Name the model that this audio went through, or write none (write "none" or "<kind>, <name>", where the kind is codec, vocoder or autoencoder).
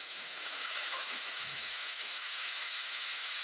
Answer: autoencoder, DAC-VAE